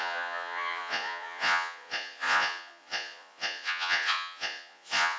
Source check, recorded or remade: remade